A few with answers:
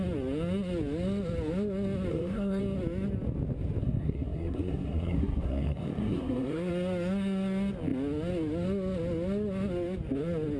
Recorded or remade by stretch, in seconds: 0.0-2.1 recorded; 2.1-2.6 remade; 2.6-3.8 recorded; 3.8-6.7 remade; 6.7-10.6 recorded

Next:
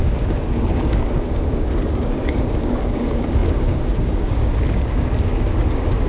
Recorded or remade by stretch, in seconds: 0.0-6.1 remade

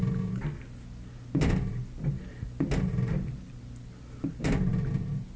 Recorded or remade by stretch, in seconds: 0.0-5.4 recorded

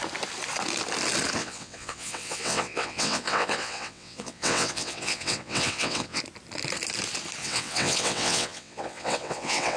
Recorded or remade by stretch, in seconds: 0.0-1.4 recorded; 1.4-6.2 remade; 6.2-7.4 recorded; 7.4-9.8 remade

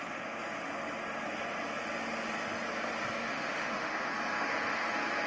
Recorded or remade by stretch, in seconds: 0.0-3.2 recorded; 3.2-4.1 remade; 4.1-5.3 recorded

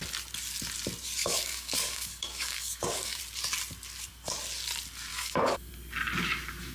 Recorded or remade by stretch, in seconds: 0.0-1.2 recorded; 1.2-3.2 remade; 3.2-5.1 recorded; 5.1-5.7 remade; 5.7-6.7 recorded

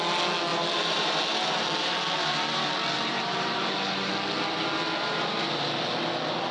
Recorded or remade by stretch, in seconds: 0.0-0.5 recorded; 0.5-4.1 remade; 4.1-6.5 recorded

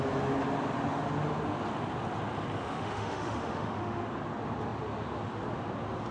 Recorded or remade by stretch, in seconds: 0.0-2.6 recorded; 2.6-4.0 remade; 4.0-6.1 recorded